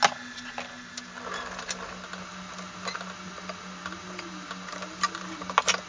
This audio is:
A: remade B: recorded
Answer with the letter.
B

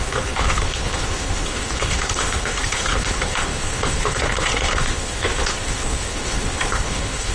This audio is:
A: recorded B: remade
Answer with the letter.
B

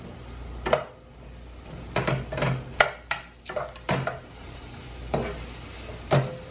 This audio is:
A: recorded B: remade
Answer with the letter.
A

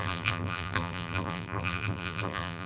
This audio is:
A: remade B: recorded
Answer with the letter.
A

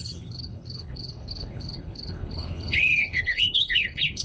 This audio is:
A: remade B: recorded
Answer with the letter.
A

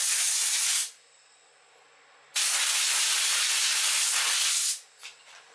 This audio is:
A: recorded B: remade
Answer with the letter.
A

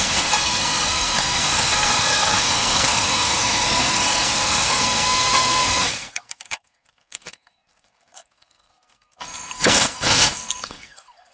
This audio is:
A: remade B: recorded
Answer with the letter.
A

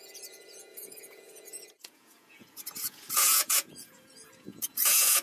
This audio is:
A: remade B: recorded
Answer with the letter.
A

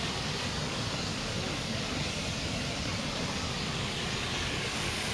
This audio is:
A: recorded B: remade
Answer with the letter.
B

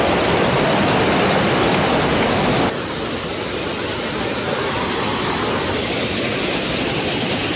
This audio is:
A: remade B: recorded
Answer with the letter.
B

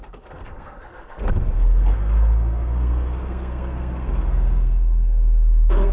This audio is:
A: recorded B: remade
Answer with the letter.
B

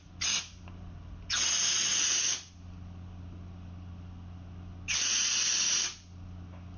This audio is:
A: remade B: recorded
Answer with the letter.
B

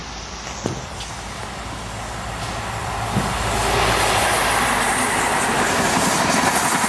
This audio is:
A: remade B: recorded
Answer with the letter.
B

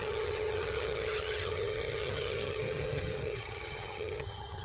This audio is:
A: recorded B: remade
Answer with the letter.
B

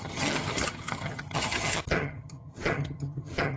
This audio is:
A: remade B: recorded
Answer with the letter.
A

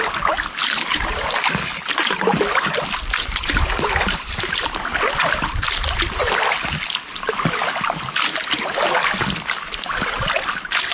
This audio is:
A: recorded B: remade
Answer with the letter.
A